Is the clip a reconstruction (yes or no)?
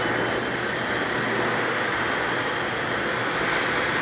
no